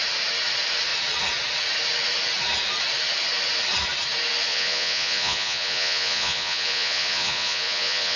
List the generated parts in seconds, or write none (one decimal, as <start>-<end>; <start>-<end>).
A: 4.5-8.2